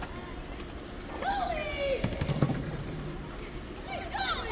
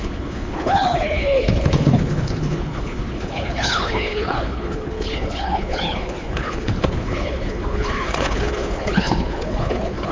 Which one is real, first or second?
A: first